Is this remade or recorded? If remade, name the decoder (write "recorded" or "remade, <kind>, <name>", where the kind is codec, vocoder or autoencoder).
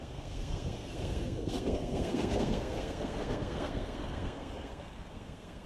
remade, codec, SNAC